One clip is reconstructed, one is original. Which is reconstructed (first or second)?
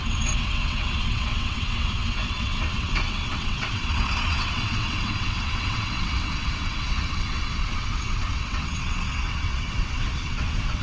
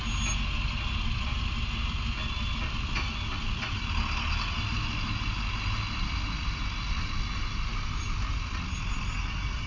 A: first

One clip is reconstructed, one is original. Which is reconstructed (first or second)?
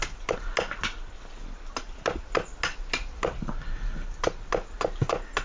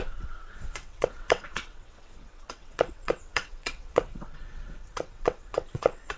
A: second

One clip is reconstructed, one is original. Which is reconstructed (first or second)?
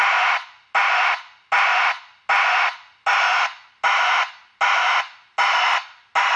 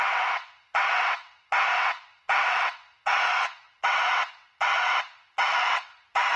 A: second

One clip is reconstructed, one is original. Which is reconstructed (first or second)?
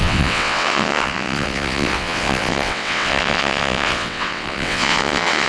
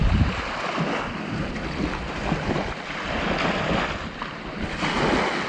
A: first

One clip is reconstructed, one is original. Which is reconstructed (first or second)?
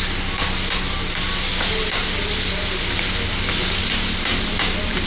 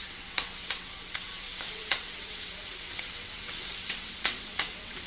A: second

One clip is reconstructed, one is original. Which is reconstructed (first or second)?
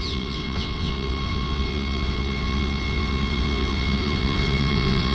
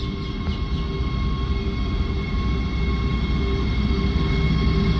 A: first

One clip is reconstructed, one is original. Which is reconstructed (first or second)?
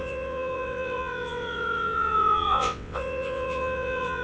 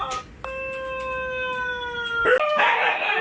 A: first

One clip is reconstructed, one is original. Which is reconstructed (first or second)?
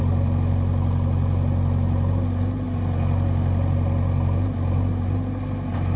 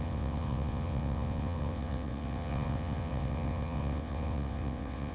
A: second